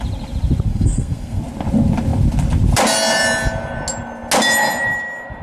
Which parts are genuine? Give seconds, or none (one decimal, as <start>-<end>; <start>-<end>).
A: 0.0-0.7; 1.4-5.4